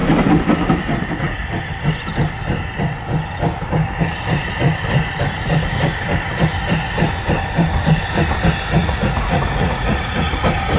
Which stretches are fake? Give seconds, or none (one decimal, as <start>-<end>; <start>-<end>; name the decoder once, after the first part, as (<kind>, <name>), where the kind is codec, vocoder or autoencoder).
8.8-10.3 (vocoder, Vocos)